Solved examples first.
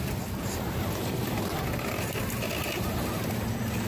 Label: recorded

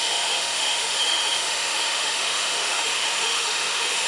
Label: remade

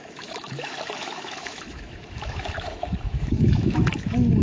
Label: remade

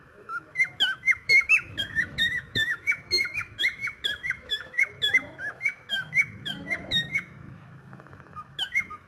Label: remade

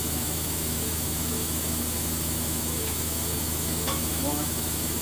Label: remade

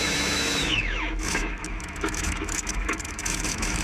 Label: remade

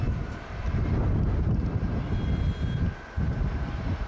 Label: recorded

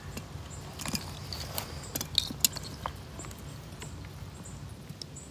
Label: recorded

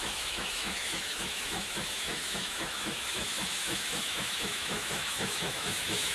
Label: remade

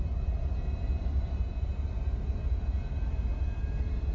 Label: recorded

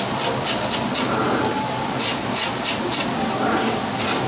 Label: recorded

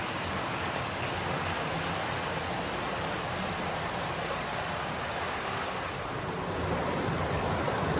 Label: recorded